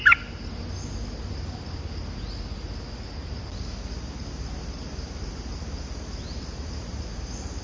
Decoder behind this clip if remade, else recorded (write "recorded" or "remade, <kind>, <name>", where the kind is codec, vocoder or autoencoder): recorded